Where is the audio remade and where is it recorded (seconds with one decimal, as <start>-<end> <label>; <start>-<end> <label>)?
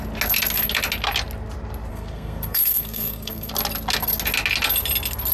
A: 0.0-1.9 recorded; 1.9-3.5 remade; 3.5-5.3 recorded